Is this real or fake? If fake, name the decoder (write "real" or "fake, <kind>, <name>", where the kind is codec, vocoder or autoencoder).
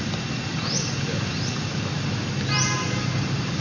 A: real